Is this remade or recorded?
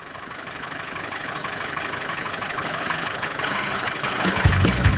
remade